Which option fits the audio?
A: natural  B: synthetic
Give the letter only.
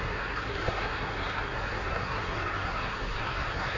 B